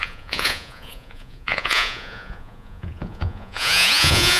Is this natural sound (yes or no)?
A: no